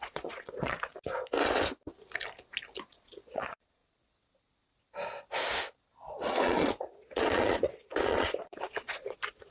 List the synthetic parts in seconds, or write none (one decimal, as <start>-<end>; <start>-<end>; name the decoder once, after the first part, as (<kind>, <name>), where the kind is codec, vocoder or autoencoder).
0.0-0.9 (vocoder, Vocos); 2.9-3.8; 6.1-9.5